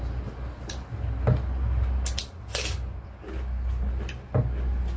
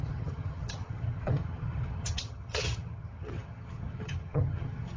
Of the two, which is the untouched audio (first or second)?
first